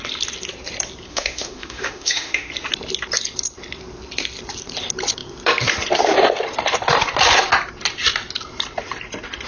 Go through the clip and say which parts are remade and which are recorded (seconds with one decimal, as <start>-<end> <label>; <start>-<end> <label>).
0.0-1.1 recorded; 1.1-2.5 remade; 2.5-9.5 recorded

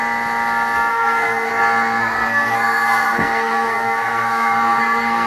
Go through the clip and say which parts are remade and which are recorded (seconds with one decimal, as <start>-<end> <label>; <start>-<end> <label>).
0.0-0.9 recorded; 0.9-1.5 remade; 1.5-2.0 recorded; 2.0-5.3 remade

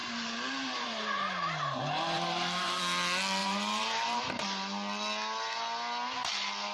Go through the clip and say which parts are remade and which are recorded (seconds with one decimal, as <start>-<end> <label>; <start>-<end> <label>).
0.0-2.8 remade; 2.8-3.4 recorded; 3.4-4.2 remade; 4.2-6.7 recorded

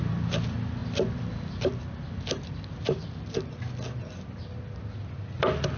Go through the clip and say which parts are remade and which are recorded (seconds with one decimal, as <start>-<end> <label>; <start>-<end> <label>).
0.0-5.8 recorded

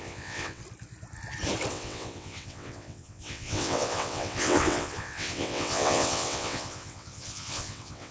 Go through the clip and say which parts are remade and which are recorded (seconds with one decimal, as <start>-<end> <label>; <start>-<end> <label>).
0.0-0.6 remade; 0.6-1.7 recorded; 1.7-8.1 remade

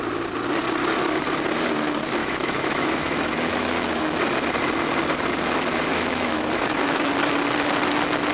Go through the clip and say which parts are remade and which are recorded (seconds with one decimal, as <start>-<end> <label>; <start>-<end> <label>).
0.0-2.2 recorded; 2.2-4.2 remade; 4.2-5.9 recorded; 5.9-7.1 remade; 7.1-8.3 recorded